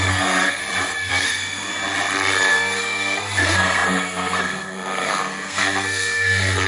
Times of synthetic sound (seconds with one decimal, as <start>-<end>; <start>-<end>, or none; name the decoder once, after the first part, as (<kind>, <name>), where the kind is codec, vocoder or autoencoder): 0.0-0.6 (codec, SNAC); 1.1-1.7; 2.5-6.7

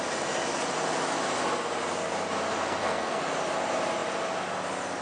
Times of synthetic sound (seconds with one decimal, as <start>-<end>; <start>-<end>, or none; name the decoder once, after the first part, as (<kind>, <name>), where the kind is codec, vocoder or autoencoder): 2.6-3.2 (codec, SNAC)

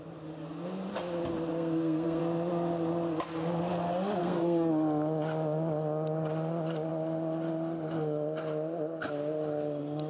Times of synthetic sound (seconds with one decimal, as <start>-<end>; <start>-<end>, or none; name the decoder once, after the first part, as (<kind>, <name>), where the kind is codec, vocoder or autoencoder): 1.5-2.2 (codec, SNAC); 4.2-4.7

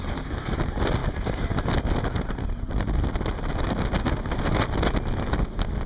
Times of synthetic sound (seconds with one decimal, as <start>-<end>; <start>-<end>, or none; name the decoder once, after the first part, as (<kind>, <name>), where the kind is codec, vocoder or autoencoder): none

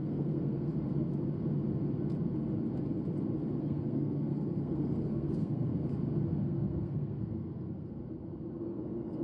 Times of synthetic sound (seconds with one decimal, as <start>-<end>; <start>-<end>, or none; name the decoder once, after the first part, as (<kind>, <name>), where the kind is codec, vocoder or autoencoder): 0.0-0.7 (codec, SNAC); 3.6-5.7; 6.4-8.0; 8.6-9.2

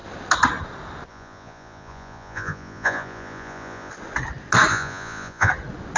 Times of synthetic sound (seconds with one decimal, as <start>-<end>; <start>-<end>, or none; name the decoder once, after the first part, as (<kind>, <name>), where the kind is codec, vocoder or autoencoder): 1.1-3.9 (vocoder, Vocos); 4.7-5.5